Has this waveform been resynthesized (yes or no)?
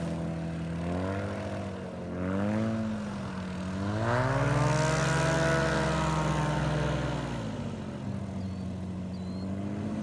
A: no